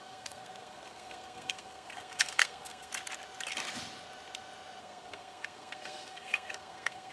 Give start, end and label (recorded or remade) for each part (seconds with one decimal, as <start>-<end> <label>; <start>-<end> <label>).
0.0-2.9 remade; 2.9-4.8 recorded; 4.8-7.1 remade